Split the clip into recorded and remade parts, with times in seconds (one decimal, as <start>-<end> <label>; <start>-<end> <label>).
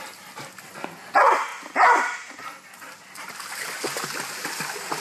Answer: 0.0-5.0 recorded